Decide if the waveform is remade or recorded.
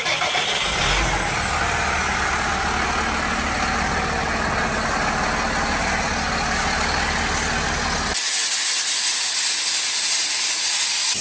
recorded